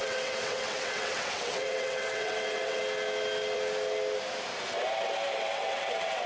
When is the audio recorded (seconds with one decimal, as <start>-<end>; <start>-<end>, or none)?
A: 2.8-5.3